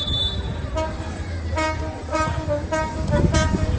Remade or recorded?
remade